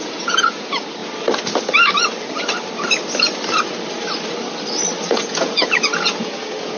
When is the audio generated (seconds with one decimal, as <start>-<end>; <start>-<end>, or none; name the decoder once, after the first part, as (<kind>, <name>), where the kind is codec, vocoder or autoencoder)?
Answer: 0.0-1.0 (vocoder, Vocos); 5.1-6.8